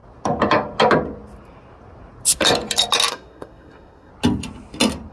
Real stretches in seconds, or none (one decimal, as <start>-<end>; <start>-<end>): 0.0-3.1; 4.1-5.1